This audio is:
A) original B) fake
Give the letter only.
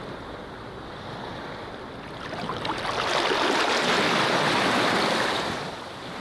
B